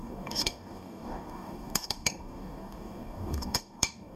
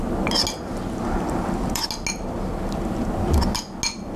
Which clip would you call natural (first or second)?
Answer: second